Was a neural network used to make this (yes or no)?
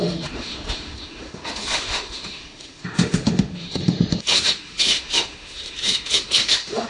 yes